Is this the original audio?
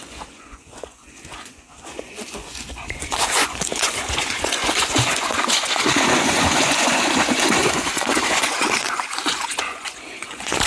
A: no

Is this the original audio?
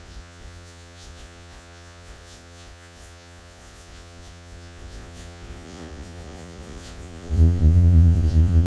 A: no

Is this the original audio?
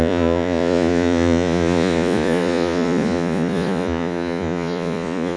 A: no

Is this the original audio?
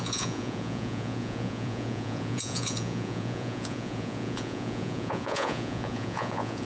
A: no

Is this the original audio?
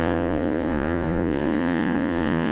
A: no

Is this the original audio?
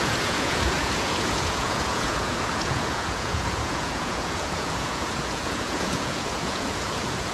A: no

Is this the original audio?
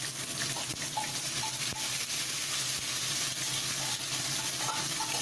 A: yes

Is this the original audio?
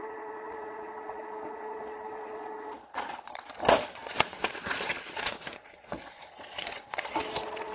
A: no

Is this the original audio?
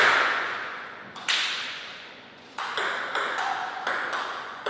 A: no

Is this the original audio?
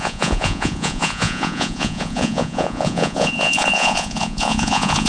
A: no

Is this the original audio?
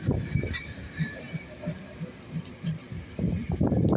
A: yes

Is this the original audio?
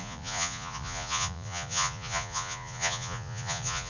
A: no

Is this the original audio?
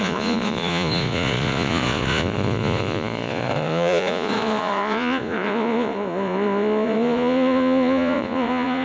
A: no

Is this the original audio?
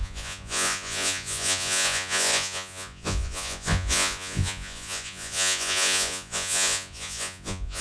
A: no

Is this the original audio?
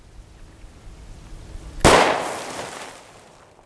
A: yes